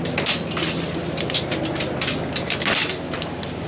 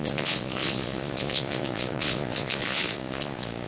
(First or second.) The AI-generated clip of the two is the second